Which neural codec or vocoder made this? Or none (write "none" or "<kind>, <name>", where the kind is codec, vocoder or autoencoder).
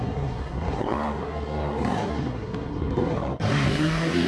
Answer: codec, SNAC